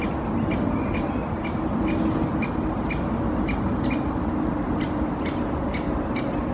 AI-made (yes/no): no